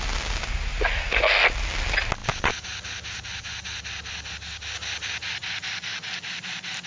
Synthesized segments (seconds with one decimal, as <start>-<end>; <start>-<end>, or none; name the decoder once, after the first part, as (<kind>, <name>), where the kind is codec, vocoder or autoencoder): none

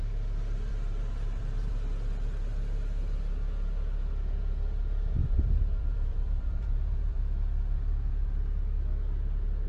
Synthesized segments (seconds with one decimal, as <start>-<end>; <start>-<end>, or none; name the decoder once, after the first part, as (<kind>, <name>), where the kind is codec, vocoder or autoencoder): 0.7-1.7 (vocoder, BigVGAN v2); 5.2-7.2

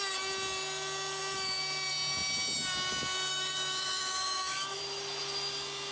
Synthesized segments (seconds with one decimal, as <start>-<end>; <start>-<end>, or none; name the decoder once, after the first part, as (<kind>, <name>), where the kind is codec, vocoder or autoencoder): 3.3-4.8 (autoencoder, DAC-VAE)

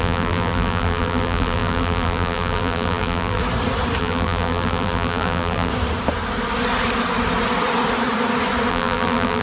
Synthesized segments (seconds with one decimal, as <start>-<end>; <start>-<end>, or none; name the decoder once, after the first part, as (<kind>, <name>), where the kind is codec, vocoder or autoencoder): 0.0-3.4 (vocoder, BigVGAN v2); 4.0-5.7; 8.7-9.4